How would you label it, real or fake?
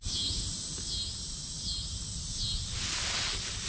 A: real